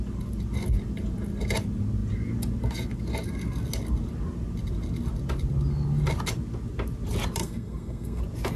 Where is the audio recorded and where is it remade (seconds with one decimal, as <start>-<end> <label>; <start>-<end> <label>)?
0.0-7.4 recorded; 7.4-8.2 remade; 8.2-8.6 recorded